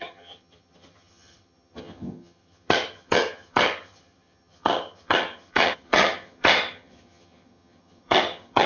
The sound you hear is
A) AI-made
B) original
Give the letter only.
A